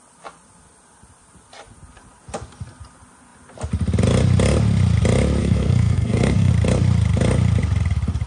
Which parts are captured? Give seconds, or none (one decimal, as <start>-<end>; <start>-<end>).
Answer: 0.0-5.4; 6.5-8.3

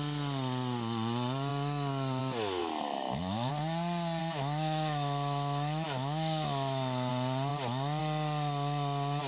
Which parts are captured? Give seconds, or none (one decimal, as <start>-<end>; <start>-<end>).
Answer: 0.0-2.6; 3.5-4.2; 7.1-9.3

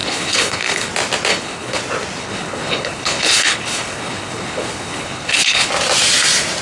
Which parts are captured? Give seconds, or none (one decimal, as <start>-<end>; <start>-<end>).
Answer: 0.9-1.3; 1.8-2.2; 5.7-6.6

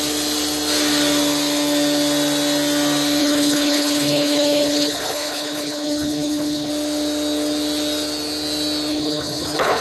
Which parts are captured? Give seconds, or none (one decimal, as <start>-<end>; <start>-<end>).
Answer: 0.0-3.2; 6.7-8.9

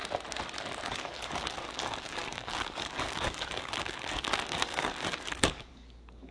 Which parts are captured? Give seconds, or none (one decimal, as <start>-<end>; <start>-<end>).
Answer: 0.0-0.9

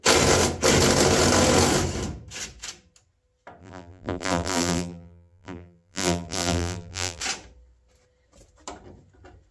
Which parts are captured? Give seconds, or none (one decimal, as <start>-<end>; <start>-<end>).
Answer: 0.0-3.6; 7.2-9.5